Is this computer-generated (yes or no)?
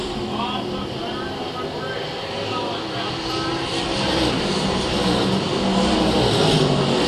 no